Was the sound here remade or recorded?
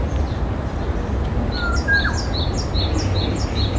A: recorded